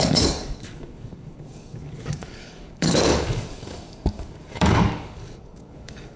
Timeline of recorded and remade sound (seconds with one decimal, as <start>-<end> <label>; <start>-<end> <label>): 0.0-6.2 remade